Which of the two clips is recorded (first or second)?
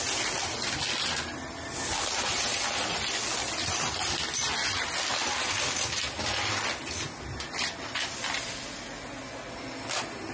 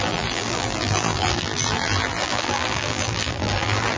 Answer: first